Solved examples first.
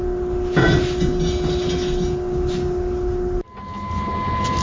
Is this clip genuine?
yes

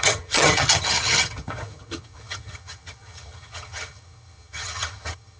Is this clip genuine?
no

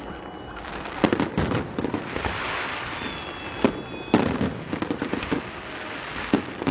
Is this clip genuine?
yes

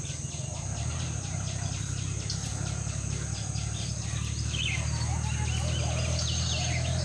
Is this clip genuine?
yes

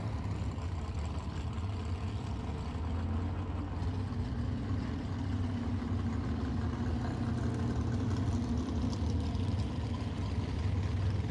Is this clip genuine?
yes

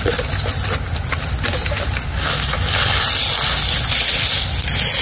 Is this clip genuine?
yes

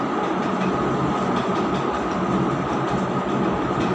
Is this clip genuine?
yes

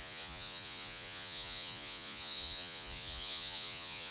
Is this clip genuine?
no